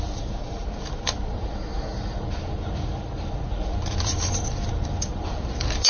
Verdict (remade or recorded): remade